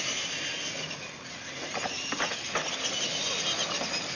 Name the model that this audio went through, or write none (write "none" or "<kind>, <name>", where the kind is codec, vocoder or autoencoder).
none